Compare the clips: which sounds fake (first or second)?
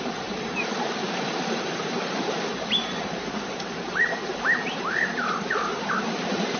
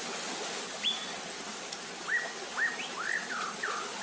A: first